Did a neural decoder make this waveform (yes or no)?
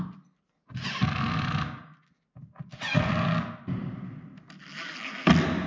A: no